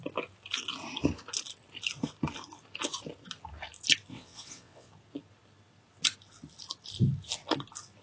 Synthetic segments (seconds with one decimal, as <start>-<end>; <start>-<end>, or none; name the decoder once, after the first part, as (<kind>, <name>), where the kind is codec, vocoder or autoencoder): 4.1-4.9 (vocoder, WaveNeXt)